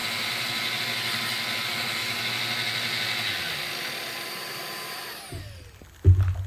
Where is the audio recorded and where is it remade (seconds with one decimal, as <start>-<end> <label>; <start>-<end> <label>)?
0.0-6.5 recorded